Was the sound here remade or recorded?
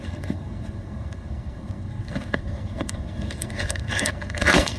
remade